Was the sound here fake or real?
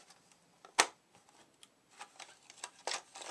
real